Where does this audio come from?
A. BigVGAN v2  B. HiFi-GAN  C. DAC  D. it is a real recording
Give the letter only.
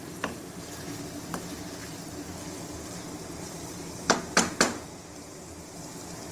A